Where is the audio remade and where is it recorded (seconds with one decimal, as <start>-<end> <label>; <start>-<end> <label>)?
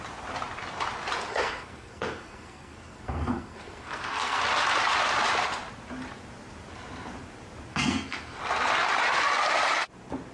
0.0-1.3 recorded; 1.3-4.4 remade; 4.4-7.7 recorded; 7.7-8.4 remade; 8.4-10.3 recorded